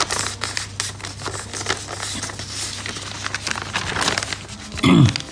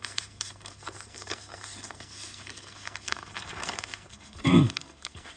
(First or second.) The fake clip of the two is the second